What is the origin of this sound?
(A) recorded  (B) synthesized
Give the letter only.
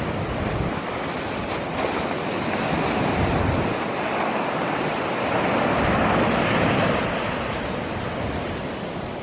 A